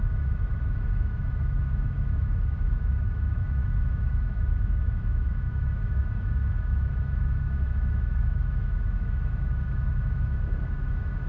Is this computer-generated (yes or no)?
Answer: yes